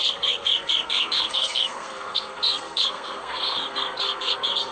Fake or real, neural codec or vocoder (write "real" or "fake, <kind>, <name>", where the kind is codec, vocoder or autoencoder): fake, codec, SNAC